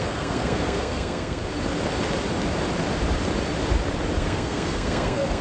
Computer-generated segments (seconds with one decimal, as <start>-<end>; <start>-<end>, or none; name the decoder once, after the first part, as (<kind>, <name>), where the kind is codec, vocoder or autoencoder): 0.0-1.4 (codec, SNAC); 4.2-5.4